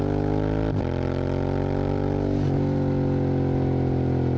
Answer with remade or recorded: recorded